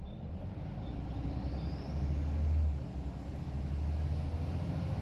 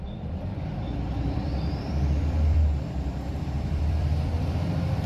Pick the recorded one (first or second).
first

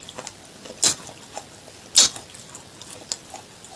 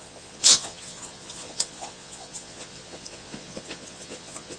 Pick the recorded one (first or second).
first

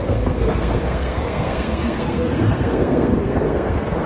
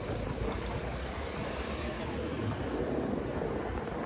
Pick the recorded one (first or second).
second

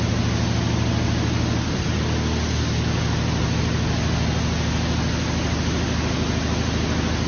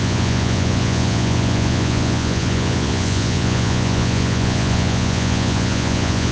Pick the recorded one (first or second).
first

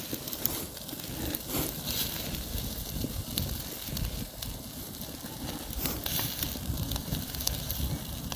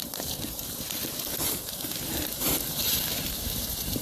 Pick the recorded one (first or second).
first